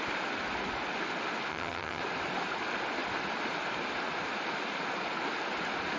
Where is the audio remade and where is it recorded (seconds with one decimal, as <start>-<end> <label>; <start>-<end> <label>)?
0.0-1.5 recorded; 1.5-2.0 remade; 2.0-6.0 recorded